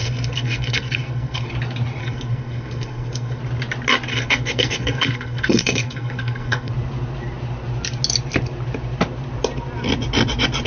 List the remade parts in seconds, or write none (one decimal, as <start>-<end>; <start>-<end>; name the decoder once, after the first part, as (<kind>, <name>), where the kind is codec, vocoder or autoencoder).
0.0-1.5 (codec, SNAC); 2.0-3.4; 4.1-6.7